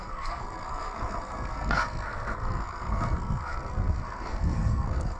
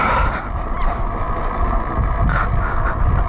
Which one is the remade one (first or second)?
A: first